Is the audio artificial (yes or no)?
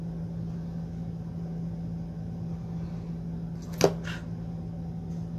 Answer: no